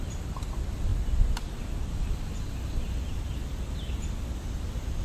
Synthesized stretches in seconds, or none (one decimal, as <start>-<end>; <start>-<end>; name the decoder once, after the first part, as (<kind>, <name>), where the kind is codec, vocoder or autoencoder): none